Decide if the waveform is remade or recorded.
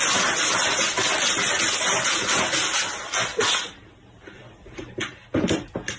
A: recorded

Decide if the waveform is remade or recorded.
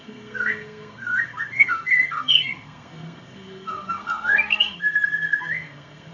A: remade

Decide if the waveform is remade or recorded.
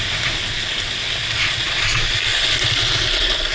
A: recorded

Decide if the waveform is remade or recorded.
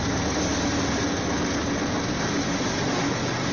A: recorded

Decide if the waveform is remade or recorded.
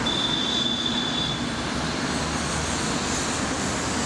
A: recorded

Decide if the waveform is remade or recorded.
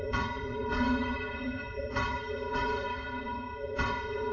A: remade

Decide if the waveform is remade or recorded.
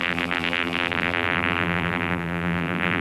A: remade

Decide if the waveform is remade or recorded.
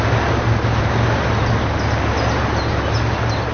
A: recorded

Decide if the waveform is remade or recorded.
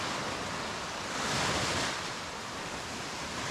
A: recorded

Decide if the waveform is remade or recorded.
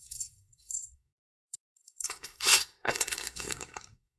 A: remade